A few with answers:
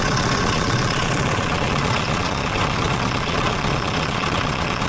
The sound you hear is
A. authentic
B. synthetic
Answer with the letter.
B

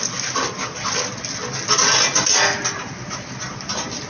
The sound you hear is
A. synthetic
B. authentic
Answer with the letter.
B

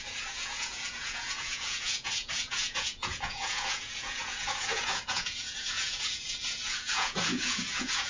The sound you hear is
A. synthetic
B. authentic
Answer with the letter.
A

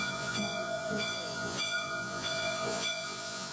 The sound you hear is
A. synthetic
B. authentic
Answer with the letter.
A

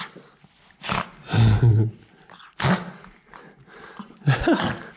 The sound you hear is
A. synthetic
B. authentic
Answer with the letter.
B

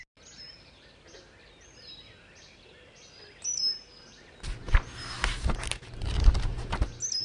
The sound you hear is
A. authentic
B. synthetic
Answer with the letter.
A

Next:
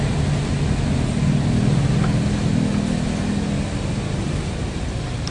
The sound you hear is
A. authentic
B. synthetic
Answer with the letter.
A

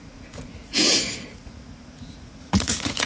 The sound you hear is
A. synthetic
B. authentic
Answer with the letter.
A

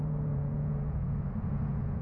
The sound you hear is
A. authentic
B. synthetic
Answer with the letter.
B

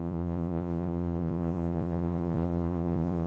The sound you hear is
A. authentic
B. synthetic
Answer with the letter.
B